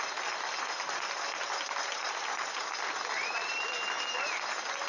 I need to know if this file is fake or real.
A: real